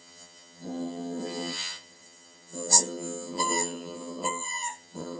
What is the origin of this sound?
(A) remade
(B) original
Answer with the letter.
A